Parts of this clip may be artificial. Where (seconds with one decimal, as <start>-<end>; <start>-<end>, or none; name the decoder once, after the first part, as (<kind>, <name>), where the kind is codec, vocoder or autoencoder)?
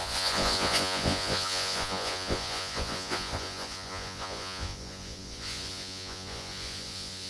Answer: 0.0-7.3 (vocoder, Vocos)